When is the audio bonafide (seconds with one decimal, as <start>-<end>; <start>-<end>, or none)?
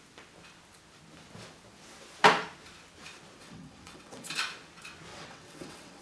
0.0-3.4; 4.3-5.1